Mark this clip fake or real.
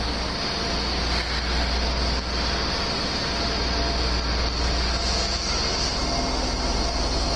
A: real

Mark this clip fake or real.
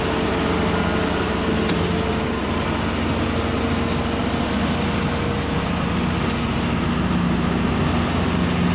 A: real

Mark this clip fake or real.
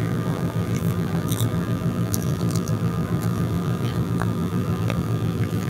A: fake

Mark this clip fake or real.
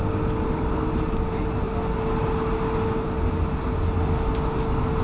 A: real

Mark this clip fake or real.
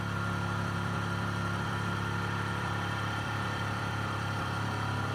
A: fake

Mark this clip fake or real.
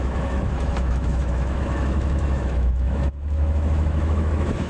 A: fake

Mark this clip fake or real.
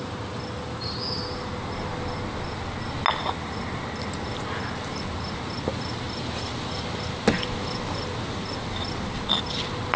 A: real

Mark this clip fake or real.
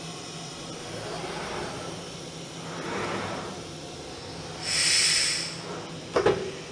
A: real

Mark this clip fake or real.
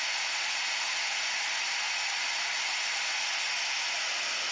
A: real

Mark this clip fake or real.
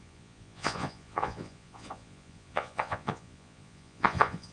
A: fake